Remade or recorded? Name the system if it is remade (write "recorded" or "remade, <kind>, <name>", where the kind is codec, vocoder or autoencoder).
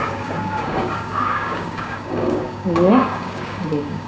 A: remade, codec, DAC